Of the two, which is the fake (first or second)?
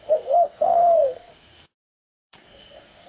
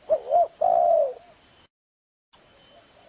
first